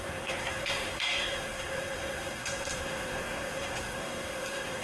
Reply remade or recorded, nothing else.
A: remade